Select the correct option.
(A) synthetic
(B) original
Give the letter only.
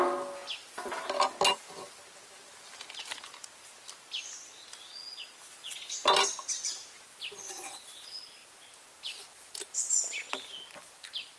B